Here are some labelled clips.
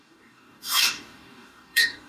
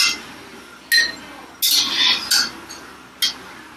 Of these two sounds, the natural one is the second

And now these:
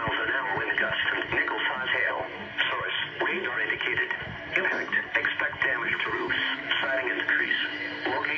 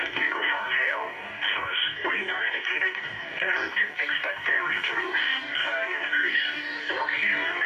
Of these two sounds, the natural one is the first